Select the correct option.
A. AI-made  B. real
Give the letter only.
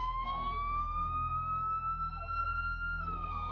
A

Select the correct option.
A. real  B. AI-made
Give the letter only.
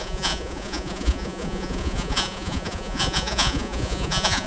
B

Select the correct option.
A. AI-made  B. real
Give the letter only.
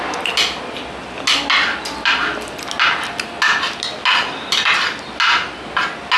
B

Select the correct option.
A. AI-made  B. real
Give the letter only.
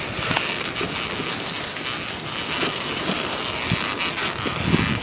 B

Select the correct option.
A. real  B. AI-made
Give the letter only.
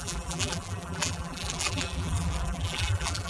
B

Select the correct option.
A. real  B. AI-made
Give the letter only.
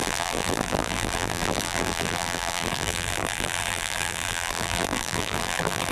B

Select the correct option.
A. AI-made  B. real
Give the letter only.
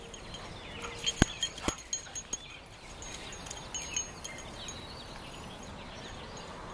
B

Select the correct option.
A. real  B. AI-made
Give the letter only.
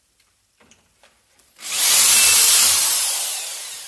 A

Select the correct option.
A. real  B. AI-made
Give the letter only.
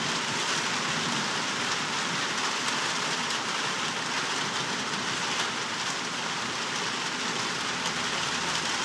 B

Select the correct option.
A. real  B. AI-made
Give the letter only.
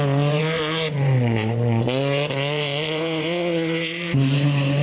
B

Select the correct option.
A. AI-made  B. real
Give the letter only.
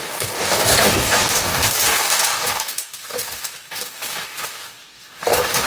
A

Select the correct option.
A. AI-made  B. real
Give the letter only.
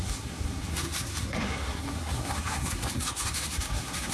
A